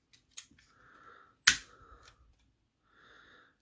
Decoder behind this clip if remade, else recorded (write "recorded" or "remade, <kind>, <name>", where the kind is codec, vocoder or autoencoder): recorded